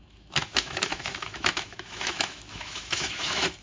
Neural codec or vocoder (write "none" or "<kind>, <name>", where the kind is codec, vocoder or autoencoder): autoencoder, DAC-VAE